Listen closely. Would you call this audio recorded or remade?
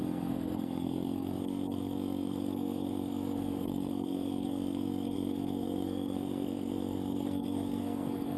remade